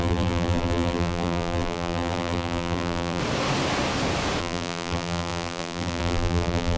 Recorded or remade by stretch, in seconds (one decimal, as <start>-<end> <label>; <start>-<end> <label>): 0.0-3.2 remade; 3.2-4.4 recorded; 4.4-6.8 remade